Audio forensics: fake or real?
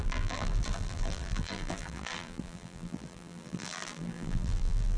fake